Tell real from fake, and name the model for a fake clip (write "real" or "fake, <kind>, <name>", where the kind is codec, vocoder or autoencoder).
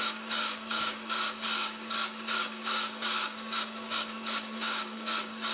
fake, codec, DAC